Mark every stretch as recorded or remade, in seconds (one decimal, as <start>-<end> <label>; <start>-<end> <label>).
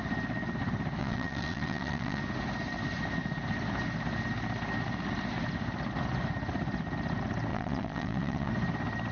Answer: 0.0-1.0 recorded; 1.0-2.2 remade; 2.2-7.5 recorded; 7.5-8.5 remade; 8.5-9.1 recorded